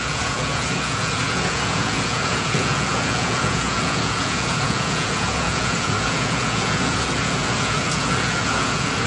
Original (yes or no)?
no